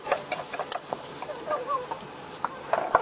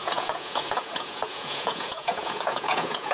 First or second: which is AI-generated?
second